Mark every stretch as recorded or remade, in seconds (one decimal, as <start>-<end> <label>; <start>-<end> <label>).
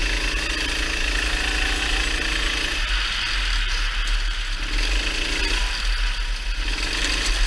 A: 0.0-7.5 recorded